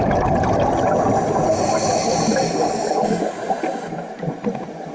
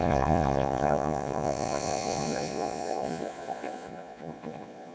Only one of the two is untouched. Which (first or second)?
first